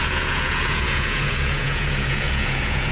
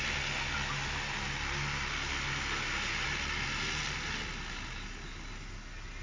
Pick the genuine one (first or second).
second